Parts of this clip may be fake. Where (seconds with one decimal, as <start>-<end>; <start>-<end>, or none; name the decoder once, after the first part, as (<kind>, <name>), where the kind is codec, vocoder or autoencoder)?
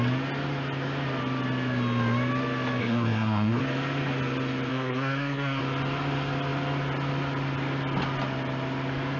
2.8-3.6 (codec, SNAC); 4.7-5.6